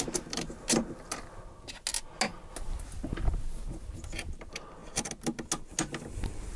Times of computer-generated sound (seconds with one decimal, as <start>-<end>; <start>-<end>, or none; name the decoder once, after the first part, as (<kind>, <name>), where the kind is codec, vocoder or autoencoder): none